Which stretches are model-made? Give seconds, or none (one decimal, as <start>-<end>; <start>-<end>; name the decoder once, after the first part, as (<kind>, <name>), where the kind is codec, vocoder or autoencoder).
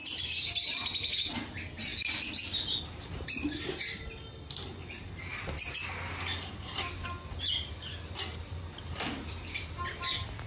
none